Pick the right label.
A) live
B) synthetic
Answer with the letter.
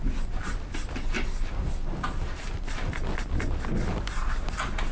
A